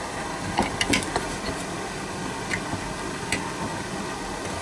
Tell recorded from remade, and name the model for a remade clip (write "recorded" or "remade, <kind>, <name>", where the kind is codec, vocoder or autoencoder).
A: recorded